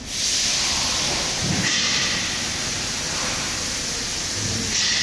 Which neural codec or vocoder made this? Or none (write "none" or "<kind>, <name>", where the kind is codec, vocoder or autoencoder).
none